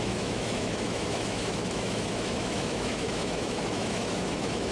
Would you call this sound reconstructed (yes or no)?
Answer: yes